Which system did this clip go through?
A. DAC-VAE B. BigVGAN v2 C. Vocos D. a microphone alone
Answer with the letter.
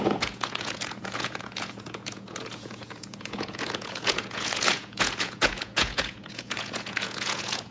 C